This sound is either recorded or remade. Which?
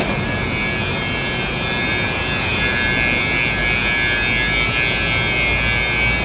recorded